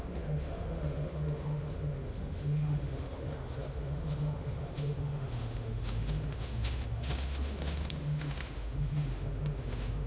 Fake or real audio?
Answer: fake